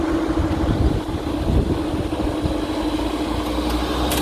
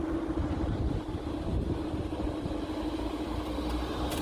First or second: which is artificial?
second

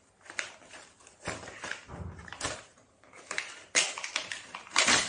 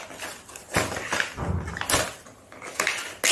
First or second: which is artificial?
first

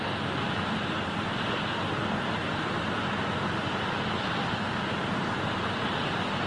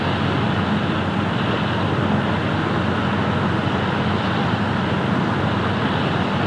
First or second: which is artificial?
first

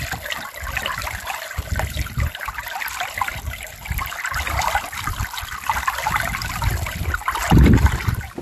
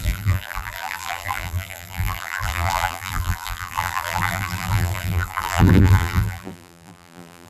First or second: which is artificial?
second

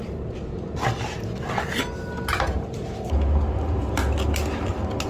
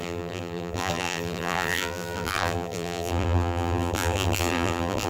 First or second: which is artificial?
second